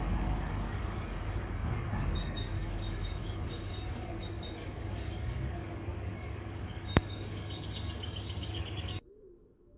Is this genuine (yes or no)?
no